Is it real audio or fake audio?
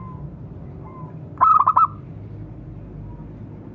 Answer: real